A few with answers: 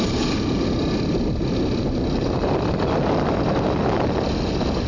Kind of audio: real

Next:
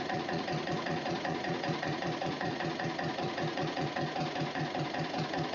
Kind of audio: fake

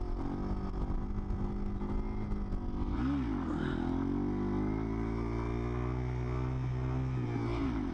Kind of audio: real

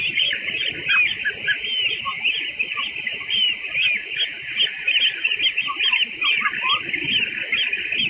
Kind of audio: real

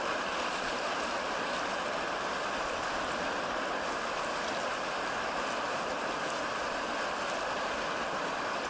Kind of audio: real